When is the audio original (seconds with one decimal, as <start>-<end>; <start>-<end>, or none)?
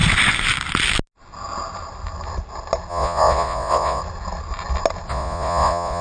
0.0-2.9; 4.0-5.1